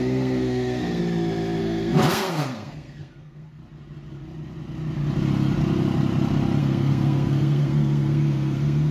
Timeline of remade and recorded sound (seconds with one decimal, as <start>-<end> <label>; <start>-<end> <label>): 0.0-1.0 remade; 1.0-1.6 recorded; 1.6-3.6 remade; 3.6-6.6 recorded; 6.6-8.9 remade